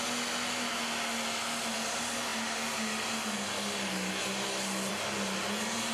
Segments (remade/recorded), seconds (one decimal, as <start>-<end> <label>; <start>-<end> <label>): 0.0-5.9 recorded